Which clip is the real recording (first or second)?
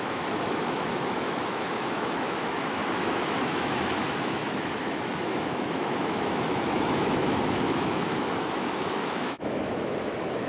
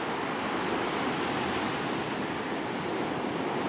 second